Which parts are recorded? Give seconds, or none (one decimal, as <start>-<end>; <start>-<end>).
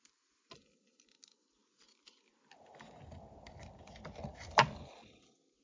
0.0-5.6